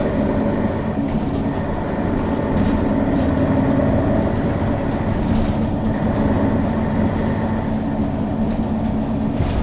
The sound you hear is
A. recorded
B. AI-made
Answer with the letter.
A